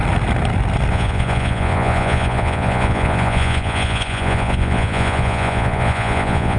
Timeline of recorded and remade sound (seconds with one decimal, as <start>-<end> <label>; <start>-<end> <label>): 0.0-0.9 recorded; 0.9-6.6 remade